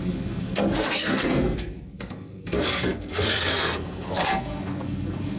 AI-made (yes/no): yes